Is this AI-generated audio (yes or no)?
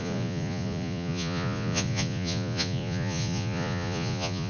yes